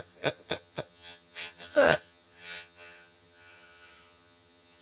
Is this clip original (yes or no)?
no